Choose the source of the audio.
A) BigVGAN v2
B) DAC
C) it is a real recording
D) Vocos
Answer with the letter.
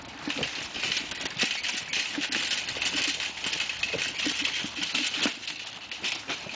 C